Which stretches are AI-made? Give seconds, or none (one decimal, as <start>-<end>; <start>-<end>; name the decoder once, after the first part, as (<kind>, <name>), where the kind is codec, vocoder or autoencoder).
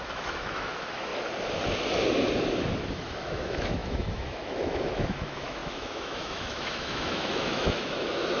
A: 0.0-1.1 (autoencoder, DAC-VAE); 2.9-8.4